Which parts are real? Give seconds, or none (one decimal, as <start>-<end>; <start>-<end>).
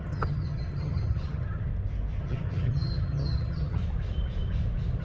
1.7-2.2; 3.8-5.0